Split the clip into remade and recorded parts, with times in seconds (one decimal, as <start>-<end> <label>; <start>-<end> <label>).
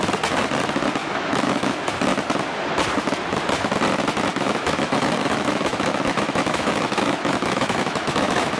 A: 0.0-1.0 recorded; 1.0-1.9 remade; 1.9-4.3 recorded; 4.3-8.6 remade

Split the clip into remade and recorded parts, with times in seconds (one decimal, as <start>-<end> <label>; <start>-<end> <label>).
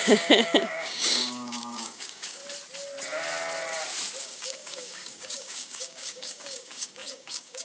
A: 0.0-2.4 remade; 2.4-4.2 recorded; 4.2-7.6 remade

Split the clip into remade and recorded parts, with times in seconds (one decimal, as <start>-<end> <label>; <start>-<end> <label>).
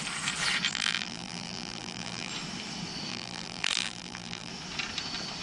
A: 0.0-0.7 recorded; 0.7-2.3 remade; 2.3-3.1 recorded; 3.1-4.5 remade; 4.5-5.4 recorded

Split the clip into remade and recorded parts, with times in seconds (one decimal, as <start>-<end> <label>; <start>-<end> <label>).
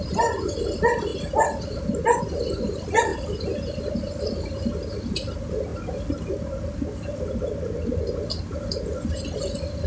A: 0.0-3.1 recorded; 3.1-4.2 remade; 4.2-9.9 recorded